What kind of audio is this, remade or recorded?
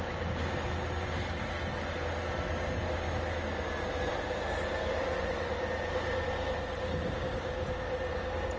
recorded